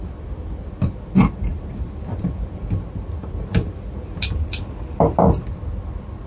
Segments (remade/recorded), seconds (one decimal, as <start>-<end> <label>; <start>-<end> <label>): 0.0-6.3 recorded